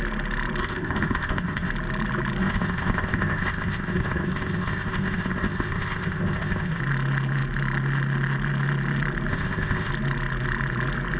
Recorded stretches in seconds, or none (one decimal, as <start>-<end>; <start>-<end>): 0.0-0.6; 1.7-2.4; 6.8-9.3; 9.9-11.2